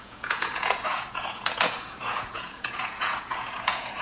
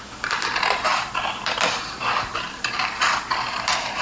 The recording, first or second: second